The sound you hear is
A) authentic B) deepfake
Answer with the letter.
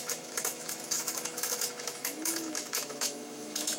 B